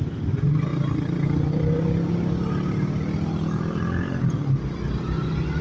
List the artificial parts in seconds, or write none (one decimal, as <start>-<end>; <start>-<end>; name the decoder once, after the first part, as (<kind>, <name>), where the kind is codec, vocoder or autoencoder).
none